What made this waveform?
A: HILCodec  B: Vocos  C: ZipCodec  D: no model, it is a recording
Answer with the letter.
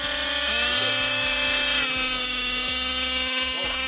D